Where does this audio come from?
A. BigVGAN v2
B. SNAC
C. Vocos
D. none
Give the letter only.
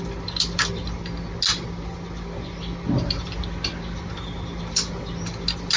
D